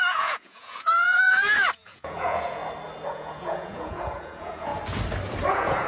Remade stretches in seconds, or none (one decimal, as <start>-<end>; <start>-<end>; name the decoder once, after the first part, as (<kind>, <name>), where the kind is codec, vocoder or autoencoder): 0.0-2.6 (vocoder, Vocos); 3.1-4.7; 5.5-5.9